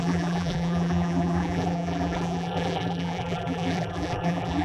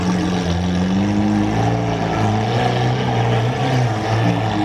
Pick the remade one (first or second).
first